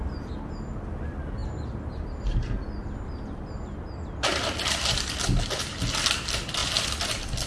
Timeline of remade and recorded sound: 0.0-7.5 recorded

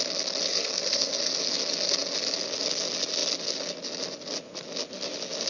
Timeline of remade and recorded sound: 0.0-0.5 recorded; 0.5-1.4 remade; 1.4-5.5 recorded

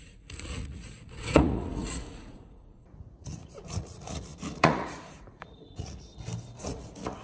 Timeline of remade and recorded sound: 0.0-6.1 remade; 6.1-6.6 recorded; 6.6-7.2 remade

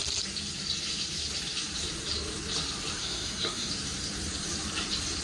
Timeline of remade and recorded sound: 0.0-3.0 recorded; 3.0-3.7 remade; 3.7-5.2 recorded

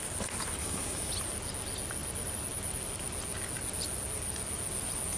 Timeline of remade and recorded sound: 0.0-0.6 recorded; 0.6-1.1 remade; 1.1-5.2 recorded

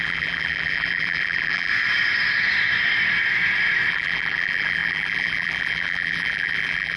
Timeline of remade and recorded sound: 0.0-1.7 remade; 1.7-3.9 recorded; 3.9-7.0 remade

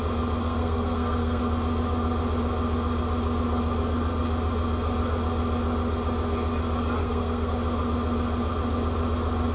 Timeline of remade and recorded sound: 0.0-0.4 recorded; 0.4-1.4 remade; 1.4-7.0 recorded; 7.0-7.5 remade; 7.5-9.5 recorded